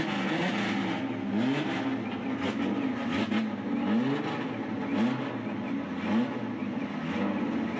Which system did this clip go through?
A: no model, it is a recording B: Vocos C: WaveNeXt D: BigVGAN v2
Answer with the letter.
A